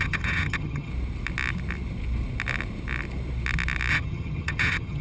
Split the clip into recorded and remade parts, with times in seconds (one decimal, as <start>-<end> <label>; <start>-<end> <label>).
0.0-0.9 remade; 0.9-3.9 recorded; 3.9-5.0 remade